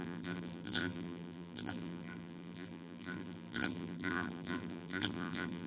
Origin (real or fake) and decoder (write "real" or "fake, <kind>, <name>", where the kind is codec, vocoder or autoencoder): fake, vocoder, BigVGAN v2